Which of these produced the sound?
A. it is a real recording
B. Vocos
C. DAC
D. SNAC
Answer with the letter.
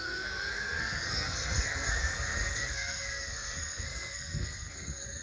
D